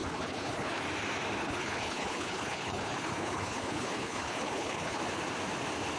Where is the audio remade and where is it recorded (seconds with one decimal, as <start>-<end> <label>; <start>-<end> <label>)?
0.0-0.8 remade; 0.8-1.4 recorded; 1.4-5.0 remade; 5.0-6.0 recorded